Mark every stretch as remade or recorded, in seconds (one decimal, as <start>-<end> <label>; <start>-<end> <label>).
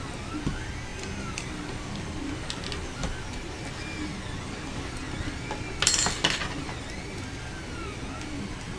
0.0-8.8 recorded